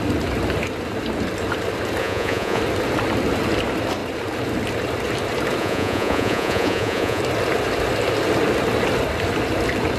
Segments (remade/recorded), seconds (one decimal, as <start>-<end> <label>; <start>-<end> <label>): 0.0-2.0 recorded; 2.0-2.6 remade; 2.6-5.6 recorded; 5.6-7.2 remade; 7.2-10.0 recorded